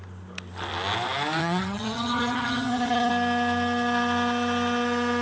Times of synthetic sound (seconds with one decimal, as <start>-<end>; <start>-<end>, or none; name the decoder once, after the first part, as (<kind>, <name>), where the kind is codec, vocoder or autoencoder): 1.4-3.1 (vocoder, HiFi-GAN)